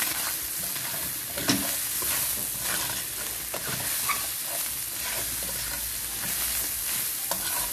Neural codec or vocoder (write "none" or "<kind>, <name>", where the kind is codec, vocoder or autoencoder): none